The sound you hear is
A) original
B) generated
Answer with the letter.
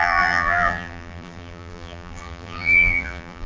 B